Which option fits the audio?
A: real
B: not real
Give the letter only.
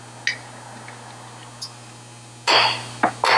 A